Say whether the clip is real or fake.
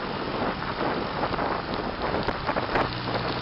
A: real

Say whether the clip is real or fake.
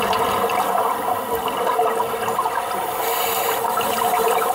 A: real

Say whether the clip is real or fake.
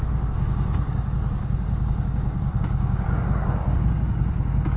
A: fake